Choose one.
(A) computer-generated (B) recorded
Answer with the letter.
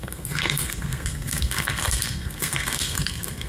A